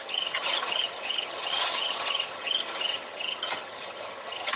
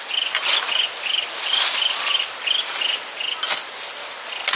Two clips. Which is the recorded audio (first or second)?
second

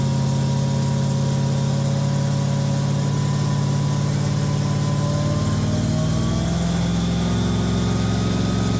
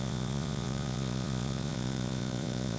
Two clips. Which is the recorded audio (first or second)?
first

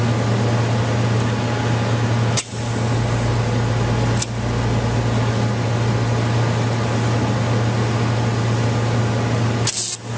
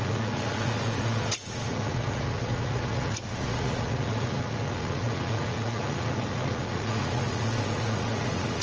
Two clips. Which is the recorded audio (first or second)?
first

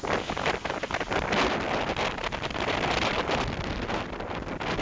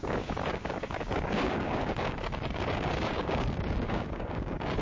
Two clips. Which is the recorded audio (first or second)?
first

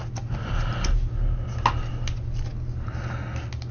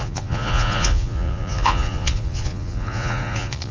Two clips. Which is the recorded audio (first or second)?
first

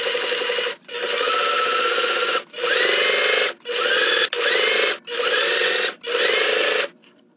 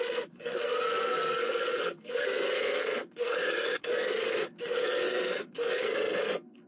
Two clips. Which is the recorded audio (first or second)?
first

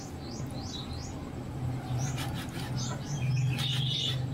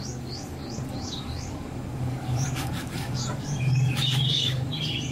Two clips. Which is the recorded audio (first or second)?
first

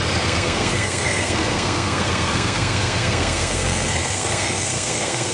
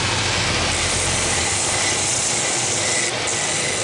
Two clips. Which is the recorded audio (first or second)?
second